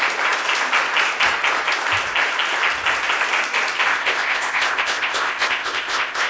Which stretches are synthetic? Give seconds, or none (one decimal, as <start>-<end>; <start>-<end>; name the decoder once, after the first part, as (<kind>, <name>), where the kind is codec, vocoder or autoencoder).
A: 3.9-6.3 (codec, ZipCodec)